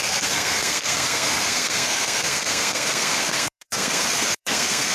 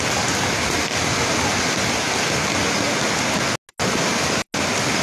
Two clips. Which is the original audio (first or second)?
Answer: second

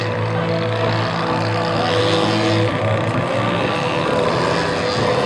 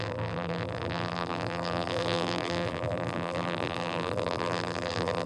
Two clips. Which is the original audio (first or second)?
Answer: first